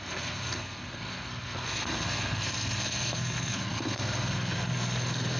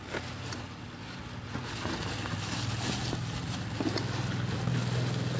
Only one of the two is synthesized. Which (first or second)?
first